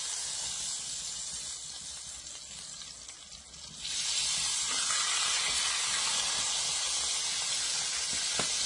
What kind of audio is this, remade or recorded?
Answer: recorded